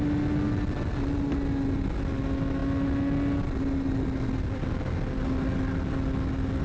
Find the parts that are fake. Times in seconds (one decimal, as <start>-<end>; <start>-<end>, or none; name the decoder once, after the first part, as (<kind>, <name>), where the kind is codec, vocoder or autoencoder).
none